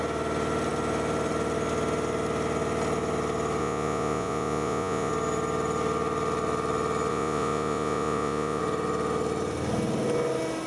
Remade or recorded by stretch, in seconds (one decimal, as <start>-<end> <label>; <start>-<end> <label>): 0.0-3.6 recorded; 3.6-5.1 remade; 5.1-7.1 recorded; 7.1-8.6 remade; 8.6-10.7 recorded